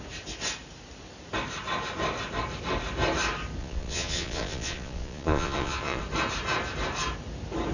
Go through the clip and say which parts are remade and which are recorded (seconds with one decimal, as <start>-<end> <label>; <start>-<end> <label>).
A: 0.0-3.6 recorded; 3.6-6.0 remade; 6.0-7.7 recorded